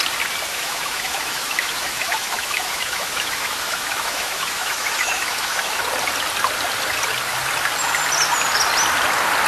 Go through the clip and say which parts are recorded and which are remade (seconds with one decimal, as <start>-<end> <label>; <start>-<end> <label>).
0.0-0.5 recorded; 0.5-5.8 remade; 5.8-9.5 recorded